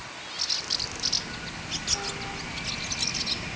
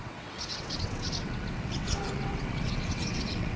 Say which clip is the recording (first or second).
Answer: first